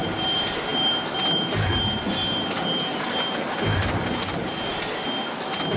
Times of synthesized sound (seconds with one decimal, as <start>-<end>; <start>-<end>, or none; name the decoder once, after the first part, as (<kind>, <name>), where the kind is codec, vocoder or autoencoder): none